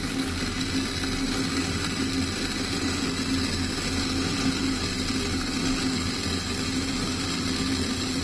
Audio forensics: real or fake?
real